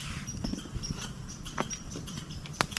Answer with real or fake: real